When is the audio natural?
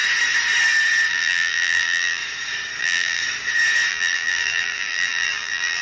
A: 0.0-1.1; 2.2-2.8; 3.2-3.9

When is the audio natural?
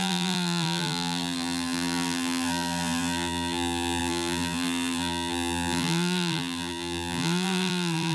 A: none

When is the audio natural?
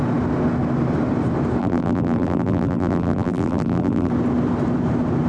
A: 0.0-1.6; 4.1-5.3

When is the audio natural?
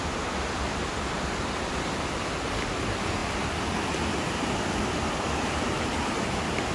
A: 3.2-4.1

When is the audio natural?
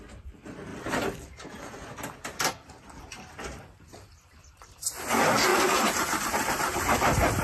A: 0.0-3.9; 5.1-7.4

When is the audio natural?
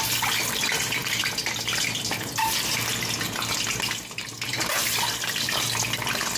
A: 0.0-6.4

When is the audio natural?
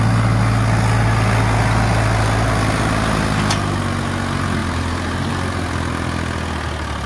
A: 0.0-4.6; 5.3-7.1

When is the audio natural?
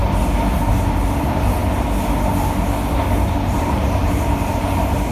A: 0.0-0.7; 1.6-3.3